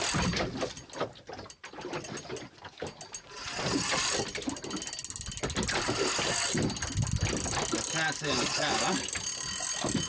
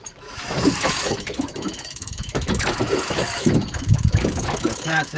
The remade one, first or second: second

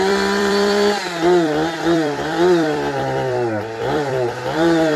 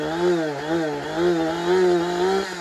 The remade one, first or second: first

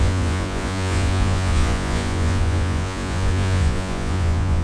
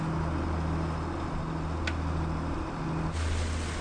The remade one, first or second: first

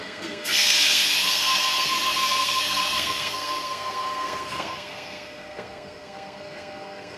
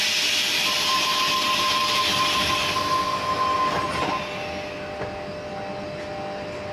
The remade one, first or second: first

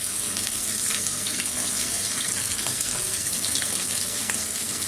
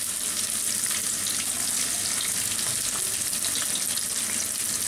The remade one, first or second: first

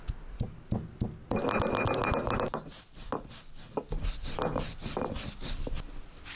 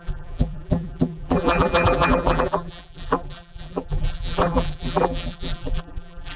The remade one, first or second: second